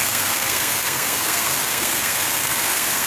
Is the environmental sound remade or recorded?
remade